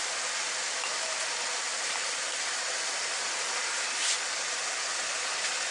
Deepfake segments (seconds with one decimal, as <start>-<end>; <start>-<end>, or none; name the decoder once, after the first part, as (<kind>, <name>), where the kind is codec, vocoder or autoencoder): none